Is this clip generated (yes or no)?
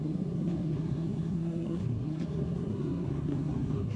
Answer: yes